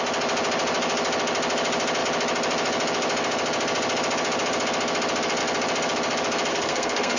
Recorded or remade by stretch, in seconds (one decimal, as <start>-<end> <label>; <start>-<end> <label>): 0.0-6.5 recorded; 6.5-7.2 remade